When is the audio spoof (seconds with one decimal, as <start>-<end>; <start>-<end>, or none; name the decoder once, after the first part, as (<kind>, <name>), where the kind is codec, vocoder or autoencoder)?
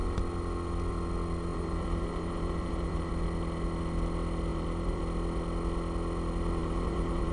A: 1.5-3.1 (vocoder, BigVGAN v2); 4.5-5.0; 6.6-7.3